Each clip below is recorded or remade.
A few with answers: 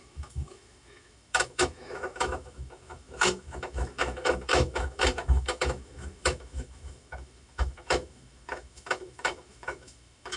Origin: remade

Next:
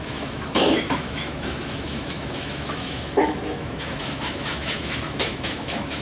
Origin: remade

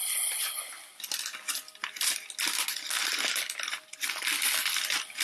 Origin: recorded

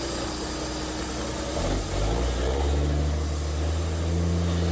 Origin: recorded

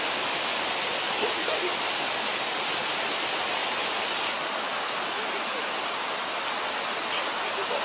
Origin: recorded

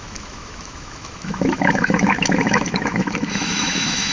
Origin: remade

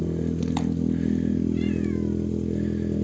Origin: recorded